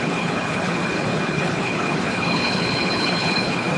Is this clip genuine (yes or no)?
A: no